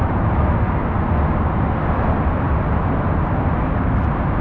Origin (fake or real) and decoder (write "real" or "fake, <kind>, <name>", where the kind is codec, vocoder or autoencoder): real